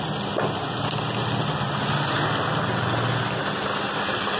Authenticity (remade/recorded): recorded